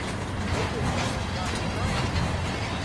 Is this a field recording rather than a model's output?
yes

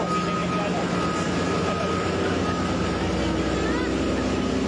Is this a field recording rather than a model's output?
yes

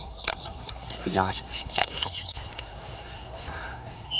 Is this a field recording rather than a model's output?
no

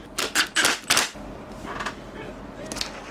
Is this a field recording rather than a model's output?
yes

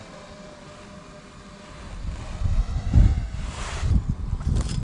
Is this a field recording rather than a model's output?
yes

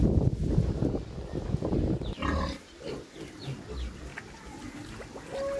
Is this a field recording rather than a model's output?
yes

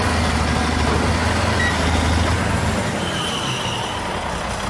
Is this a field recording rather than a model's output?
yes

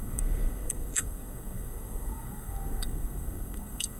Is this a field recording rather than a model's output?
no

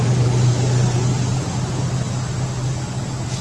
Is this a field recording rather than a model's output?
yes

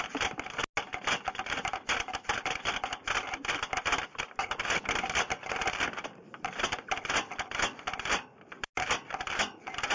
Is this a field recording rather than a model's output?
yes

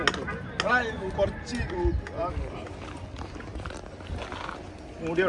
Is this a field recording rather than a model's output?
yes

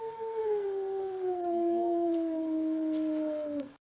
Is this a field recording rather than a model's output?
no